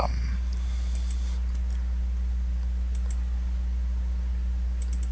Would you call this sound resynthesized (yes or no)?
no